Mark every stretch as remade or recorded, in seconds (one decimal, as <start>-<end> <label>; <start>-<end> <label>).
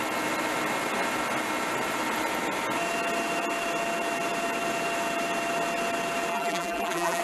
0.0-6.3 recorded; 6.3-7.2 remade